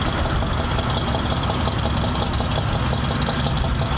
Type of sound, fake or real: real